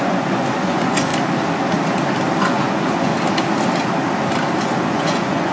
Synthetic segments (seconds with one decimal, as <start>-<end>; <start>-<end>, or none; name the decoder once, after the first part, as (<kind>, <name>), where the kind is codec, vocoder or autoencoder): 0.0-1.1 (vocoder, Vocos); 2.4-3.1; 4.6-5.5